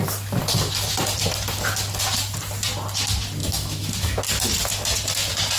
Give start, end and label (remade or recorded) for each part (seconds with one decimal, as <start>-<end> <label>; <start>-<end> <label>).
0.0-3.4 recorded; 3.4-4.2 remade; 4.2-5.6 recorded